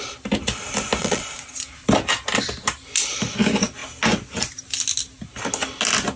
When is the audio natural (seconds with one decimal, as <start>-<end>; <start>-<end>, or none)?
0.0-1.0; 1.6-6.2